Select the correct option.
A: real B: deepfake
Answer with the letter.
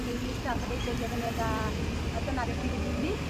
B